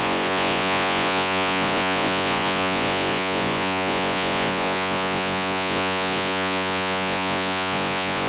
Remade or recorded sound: remade